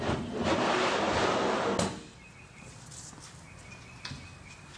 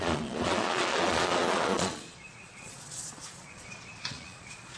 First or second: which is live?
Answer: first